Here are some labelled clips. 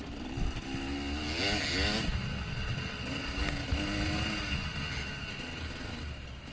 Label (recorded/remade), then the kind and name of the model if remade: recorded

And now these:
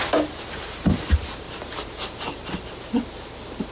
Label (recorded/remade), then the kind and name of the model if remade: recorded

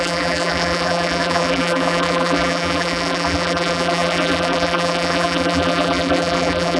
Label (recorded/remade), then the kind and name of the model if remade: remade, vocoder, BigVGAN v2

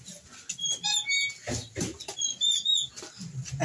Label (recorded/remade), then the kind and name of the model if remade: recorded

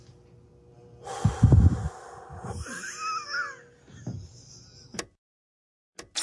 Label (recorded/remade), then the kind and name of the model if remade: recorded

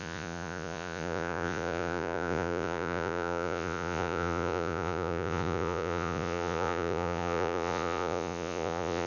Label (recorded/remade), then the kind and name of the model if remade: remade, vocoder, Vocos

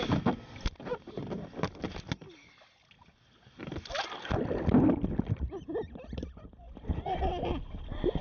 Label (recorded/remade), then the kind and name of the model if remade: recorded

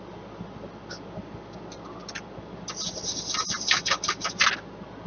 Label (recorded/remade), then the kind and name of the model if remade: recorded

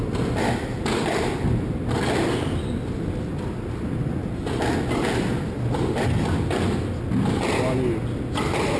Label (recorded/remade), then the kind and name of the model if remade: recorded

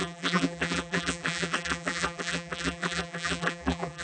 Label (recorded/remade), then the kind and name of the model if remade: remade, vocoder, BigVGAN v2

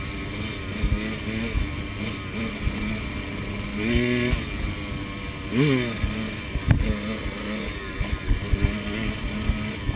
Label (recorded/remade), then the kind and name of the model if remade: recorded